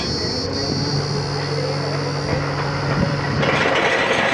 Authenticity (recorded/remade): recorded